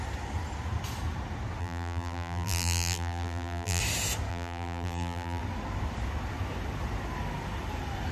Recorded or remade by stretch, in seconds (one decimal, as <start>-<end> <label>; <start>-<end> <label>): 0.0-1.6 recorded; 1.6-3.8 remade; 3.8-4.3 recorded; 4.3-5.4 remade; 5.4-8.1 recorded